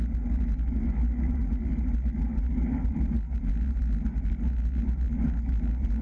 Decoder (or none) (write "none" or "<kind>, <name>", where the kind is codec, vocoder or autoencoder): none